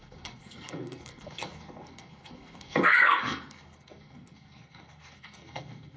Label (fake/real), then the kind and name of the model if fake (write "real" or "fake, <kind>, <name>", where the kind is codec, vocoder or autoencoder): fake, codec, SNAC